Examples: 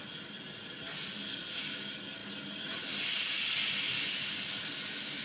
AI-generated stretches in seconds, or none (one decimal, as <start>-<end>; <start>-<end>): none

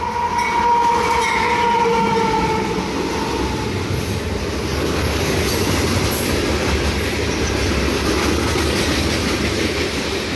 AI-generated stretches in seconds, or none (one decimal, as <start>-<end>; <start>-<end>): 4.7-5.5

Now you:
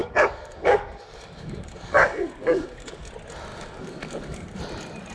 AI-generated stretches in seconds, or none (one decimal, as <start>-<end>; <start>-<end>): 0.0-3.1; 3.5-4.6